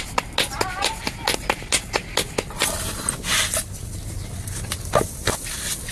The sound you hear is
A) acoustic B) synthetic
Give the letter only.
A